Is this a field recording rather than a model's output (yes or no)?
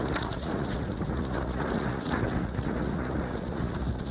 no